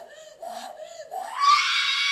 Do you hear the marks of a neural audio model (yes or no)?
no